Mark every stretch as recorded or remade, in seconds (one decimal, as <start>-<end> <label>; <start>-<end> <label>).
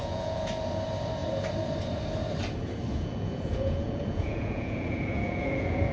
0.0-0.5 remade; 0.5-2.9 recorded; 2.9-5.9 remade